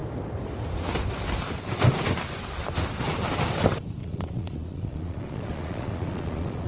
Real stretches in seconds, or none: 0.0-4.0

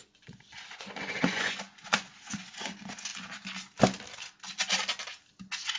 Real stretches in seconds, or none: 3.1-5.8